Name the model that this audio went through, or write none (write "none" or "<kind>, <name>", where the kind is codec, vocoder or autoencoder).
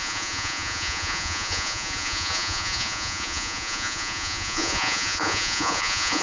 vocoder, Vocos